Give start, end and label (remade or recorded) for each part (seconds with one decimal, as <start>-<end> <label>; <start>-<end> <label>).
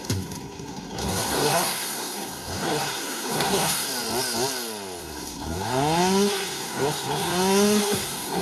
0.0-3.9 remade; 3.9-5.0 recorded; 5.0-8.4 remade